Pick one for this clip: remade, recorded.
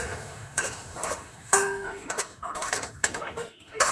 remade